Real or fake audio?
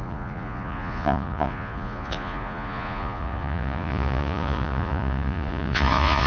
fake